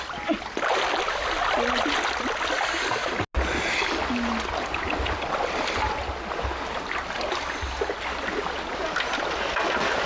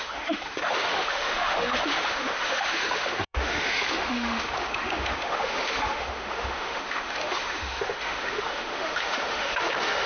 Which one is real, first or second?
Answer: first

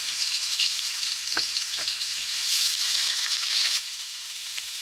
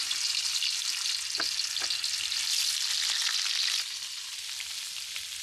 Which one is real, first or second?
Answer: second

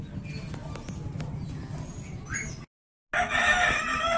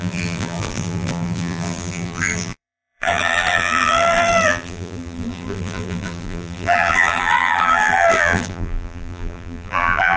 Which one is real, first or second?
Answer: first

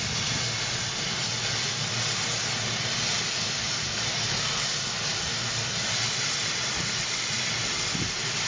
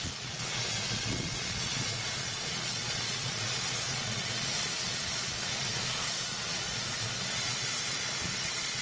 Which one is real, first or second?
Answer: first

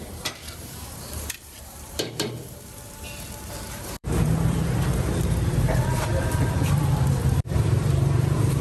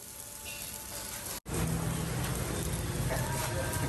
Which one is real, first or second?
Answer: second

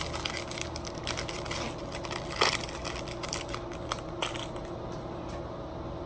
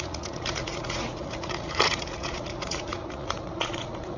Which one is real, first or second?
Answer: first